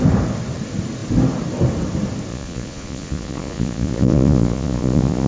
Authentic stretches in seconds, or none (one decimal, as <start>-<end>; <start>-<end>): 0.0-2.3